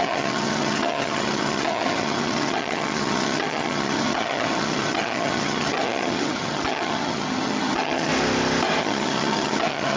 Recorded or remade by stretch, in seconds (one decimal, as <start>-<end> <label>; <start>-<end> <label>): 0.0-8.1 remade; 8.1-8.8 recorded; 8.8-10.0 remade